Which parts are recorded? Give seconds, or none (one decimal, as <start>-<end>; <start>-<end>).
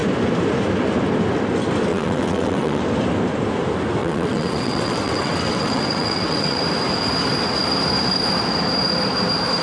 0.0-1.9; 2.8-4.0; 6.6-9.6